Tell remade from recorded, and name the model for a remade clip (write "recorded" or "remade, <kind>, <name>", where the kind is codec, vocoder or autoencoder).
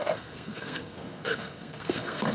remade, codec, SNAC